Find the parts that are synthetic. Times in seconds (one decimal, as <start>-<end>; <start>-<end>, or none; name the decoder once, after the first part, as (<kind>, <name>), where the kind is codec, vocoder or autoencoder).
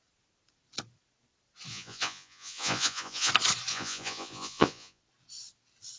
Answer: 1.7-3.3 (vocoder, Vocos); 3.7-5.0